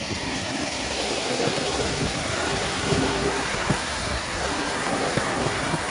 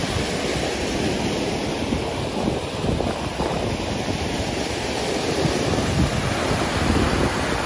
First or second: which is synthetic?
first